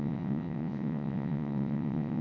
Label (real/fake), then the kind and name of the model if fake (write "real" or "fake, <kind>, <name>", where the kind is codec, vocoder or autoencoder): fake, vocoder, WaveNeXt